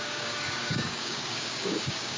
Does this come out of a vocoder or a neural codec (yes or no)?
yes